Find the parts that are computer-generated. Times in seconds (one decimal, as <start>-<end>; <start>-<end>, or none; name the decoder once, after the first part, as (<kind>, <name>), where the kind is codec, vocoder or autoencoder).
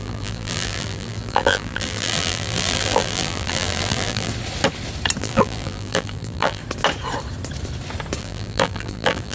0.0-4.3 (vocoder, BigVGAN v2); 5.2-6.6; 8.2-9.3